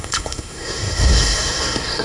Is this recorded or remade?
remade